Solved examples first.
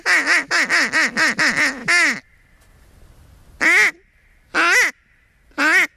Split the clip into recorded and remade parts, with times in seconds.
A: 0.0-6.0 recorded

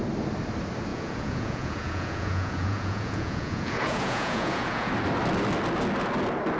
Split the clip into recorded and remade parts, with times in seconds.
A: 0.0-0.9 recorded; 0.9-4.9 remade; 4.9-6.6 recorded

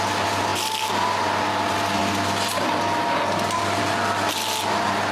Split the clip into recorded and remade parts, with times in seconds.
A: 0.0-5.1 recorded

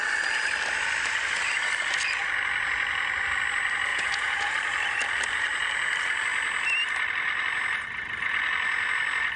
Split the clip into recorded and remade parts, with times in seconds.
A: 0.0-3.9 recorded; 3.9-4.5 remade; 4.5-9.4 recorded

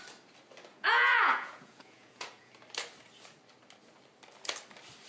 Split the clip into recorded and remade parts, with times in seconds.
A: 0.0-0.7 recorded; 0.7-2.5 remade; 2.5-5.1 recorded

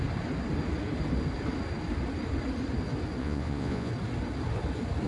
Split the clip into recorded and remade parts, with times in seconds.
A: 0.0-3.2 recorded; 3.2-3.9 remade; 3.9-5.1 recorded